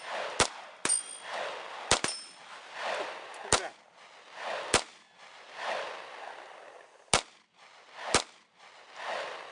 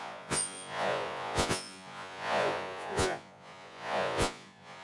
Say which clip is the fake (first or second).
second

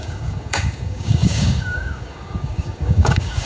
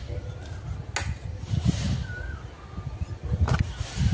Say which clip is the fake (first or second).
first